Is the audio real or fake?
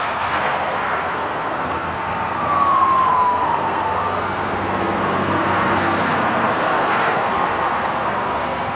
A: fake